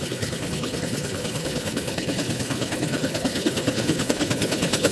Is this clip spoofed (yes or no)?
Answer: yes